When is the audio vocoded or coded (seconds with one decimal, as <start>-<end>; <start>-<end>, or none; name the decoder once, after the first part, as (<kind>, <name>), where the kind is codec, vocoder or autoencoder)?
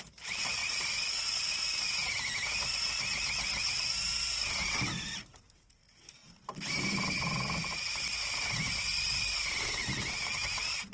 0.0-0.6 (vocoder, BigVGAN v2); 5.0-6.2; 8.3-10.9